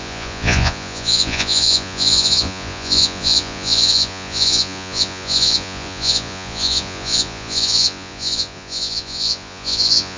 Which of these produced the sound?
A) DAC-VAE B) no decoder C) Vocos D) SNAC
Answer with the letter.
C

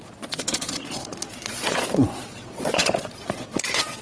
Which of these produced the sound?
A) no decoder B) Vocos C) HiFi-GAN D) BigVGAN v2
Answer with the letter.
B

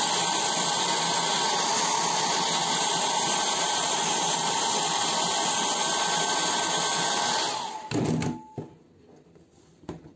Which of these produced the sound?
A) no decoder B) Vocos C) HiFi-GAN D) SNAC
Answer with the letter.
A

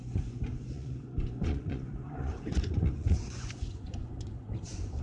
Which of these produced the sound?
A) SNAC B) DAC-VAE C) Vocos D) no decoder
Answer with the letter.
C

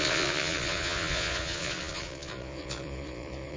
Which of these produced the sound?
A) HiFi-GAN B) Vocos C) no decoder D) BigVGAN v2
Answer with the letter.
B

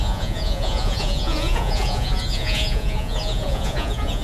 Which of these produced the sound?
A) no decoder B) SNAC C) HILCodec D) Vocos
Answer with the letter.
D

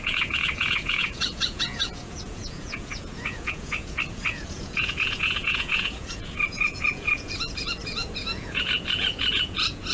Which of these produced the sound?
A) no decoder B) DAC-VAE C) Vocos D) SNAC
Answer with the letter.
C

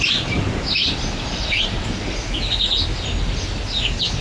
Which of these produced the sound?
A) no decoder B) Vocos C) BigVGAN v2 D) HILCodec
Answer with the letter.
A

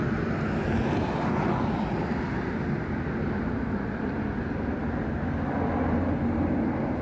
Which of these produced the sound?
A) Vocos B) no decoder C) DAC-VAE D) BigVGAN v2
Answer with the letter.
B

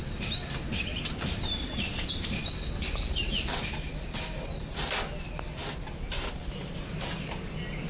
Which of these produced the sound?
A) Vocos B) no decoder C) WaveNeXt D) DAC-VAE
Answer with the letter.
B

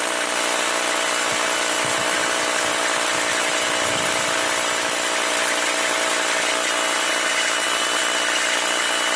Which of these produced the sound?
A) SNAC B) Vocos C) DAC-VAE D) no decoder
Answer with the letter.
D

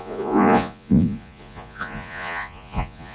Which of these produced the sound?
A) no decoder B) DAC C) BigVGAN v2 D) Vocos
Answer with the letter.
D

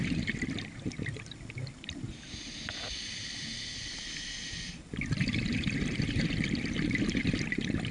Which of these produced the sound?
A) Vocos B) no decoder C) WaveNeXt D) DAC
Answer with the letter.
B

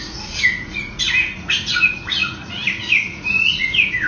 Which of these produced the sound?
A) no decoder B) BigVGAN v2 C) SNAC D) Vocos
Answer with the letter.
D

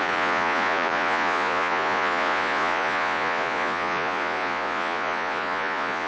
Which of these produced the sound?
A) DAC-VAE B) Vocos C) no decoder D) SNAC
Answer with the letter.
B